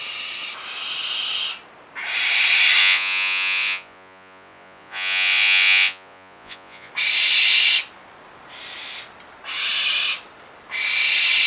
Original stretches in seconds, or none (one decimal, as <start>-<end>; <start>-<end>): 0.0-2.8; 6.9-11.5